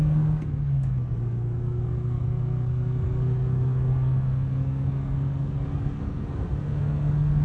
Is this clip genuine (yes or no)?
no